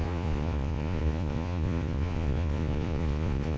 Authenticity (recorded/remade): remade